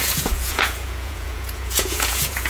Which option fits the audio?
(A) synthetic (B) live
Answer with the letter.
A